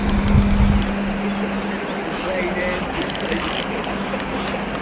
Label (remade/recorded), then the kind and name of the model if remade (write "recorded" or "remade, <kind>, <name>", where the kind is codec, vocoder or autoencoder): recorded